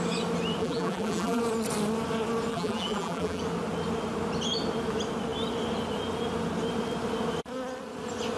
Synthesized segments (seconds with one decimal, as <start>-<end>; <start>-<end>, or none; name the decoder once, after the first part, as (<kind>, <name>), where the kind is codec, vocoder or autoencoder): 0.6-1.4 (vocoder, BigVGAN v2); 2.5-3.4